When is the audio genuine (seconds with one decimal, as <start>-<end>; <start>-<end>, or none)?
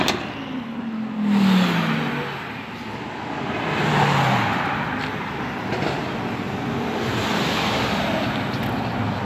0.0-9.3